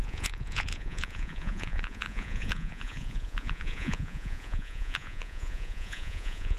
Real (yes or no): no